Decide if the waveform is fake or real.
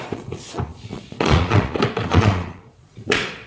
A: fake